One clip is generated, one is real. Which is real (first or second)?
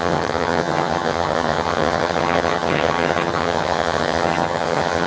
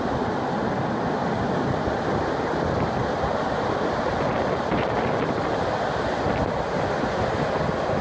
second